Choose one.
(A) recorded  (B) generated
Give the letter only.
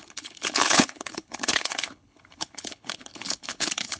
B